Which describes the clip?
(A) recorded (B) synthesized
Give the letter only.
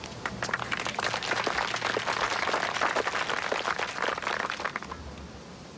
A